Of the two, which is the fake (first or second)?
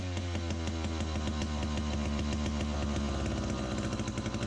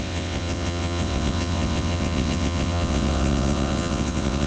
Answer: second